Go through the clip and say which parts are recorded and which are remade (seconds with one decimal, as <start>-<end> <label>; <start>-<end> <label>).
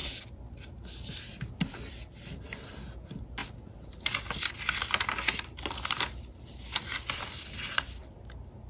0.0-8.7 recorded